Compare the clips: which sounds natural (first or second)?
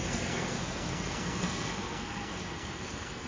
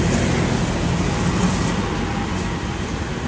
second